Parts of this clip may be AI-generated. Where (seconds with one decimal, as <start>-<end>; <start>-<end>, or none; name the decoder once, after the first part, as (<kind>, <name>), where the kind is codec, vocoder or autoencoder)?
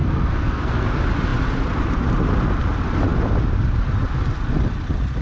0.0-0.9 (codec, SNAC)